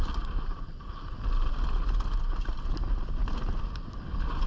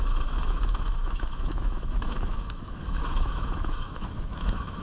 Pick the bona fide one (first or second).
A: first